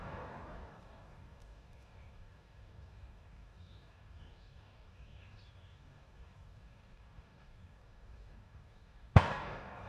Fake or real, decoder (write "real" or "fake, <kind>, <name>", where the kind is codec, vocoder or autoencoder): fake, codec, DAC